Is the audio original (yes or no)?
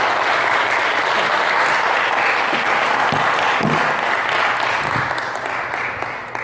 yes